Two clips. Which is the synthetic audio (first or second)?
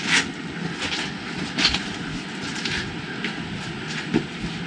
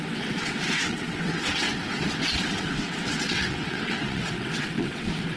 second